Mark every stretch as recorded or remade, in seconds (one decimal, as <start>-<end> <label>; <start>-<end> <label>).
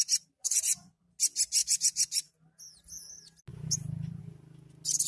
0.0-0.4 recorded; 0.4-1.0 remade; 1.0-1.6 recorded; 1.6-2.3 remade; 2.3-5.1 recorded